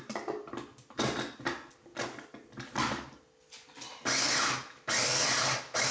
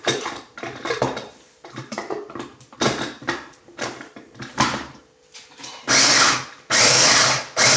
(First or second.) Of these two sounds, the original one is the first